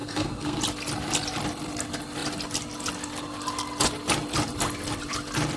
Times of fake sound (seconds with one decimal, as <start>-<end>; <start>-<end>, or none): 0.0-0.6